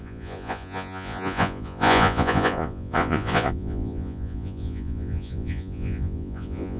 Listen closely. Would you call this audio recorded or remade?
remade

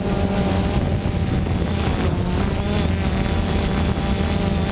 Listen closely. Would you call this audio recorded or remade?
recorded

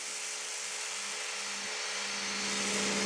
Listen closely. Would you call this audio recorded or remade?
recorded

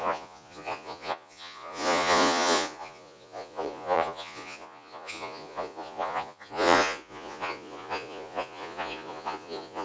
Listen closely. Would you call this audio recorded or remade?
remade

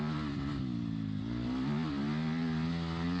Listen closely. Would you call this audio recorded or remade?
recorded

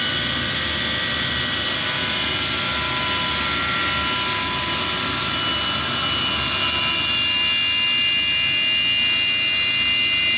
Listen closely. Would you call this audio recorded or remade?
recorded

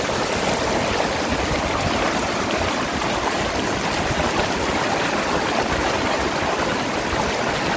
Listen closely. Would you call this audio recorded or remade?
recorded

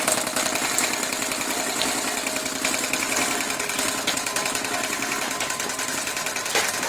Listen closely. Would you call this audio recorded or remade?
recorded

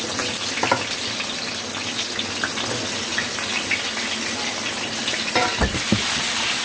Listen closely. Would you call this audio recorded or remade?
recorded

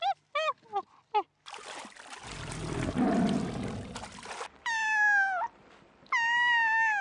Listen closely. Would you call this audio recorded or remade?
recorded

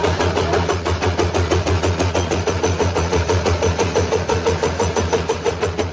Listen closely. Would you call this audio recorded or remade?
remade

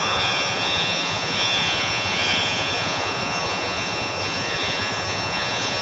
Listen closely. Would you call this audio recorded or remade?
remade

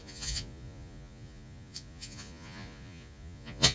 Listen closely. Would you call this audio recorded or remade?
remade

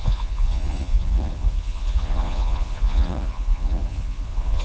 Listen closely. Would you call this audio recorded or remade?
remade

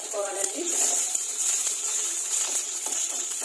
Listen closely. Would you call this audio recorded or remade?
remade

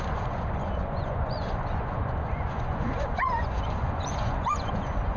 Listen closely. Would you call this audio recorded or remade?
remade